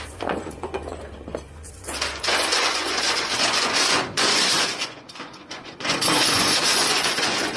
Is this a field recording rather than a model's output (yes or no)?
no